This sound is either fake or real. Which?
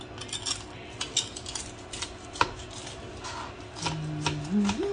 real